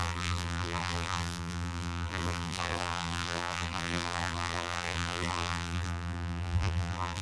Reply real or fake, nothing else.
fake